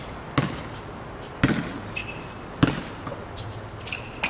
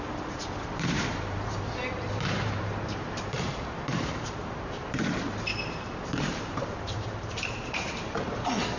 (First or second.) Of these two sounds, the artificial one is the second